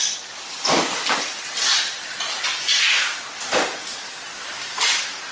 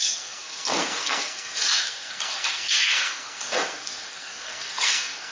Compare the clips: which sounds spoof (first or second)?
second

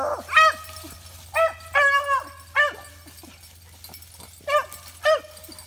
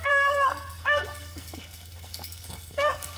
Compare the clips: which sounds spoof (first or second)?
second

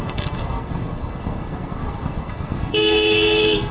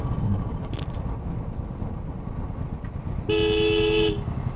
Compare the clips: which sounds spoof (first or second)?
first